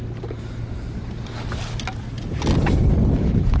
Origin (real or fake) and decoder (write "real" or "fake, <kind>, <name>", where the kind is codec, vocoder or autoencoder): real